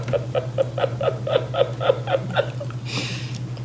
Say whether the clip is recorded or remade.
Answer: recorded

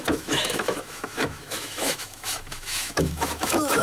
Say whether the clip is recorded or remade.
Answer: remade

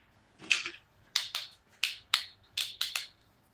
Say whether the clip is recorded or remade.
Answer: remade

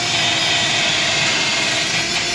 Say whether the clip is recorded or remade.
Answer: recorded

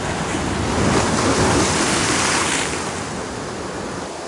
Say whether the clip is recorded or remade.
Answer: recorded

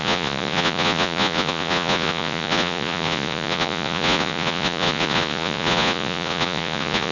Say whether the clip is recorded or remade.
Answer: remade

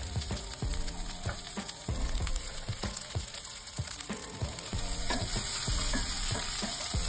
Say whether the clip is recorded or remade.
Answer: remade